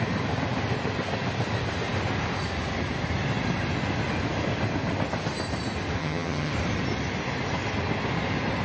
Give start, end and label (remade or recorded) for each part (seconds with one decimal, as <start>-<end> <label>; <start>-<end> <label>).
0.0-6.0 recorded; 6.0-6.5 remade; 6.5-8.6 recorded